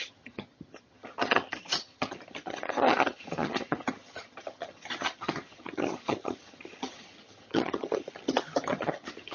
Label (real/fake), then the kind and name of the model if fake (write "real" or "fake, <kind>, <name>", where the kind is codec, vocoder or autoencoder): fake, vocoder, HiFi-GAN